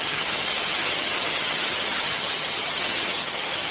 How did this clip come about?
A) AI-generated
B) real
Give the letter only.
A